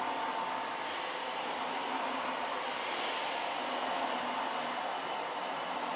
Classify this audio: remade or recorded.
recorded